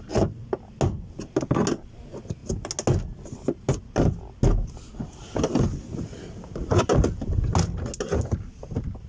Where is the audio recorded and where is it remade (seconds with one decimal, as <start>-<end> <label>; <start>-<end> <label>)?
0.0-9.1 recorded